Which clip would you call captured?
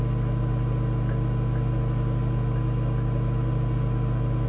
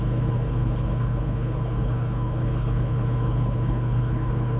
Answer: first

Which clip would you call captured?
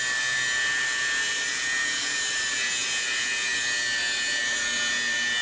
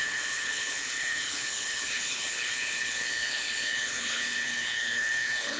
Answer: first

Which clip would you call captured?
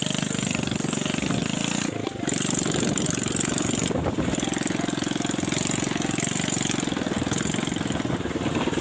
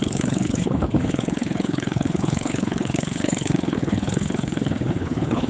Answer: first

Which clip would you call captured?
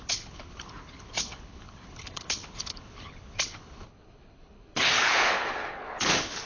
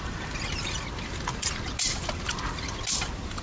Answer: second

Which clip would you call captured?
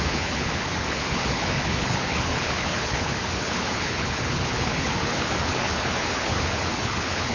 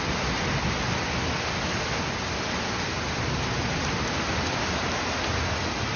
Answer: second